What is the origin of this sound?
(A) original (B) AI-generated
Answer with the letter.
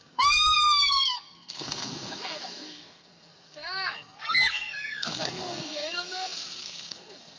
B